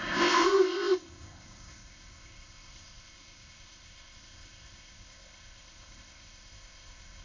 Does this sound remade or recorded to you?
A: remade